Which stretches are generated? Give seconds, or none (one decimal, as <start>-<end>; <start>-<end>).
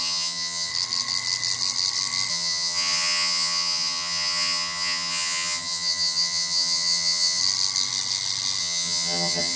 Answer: 0.0-0.7; 2.3-7.4; 8.6-9.6